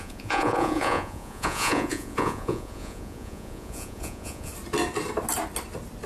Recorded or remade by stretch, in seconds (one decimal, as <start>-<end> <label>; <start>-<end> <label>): 0.0-4.5 remade; 4.5-6.1 recorded